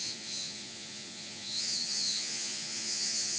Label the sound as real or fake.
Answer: fake